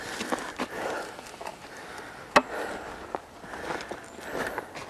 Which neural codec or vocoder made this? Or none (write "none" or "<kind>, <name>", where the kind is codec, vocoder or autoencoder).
none